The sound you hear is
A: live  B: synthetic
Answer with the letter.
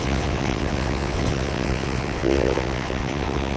B